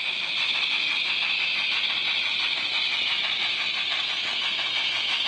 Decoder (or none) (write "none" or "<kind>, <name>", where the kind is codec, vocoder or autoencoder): none